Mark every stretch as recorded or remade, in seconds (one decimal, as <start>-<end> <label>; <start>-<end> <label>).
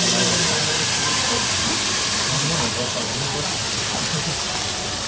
0.0-5.1 recorded